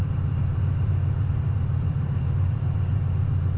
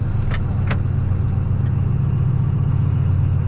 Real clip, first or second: second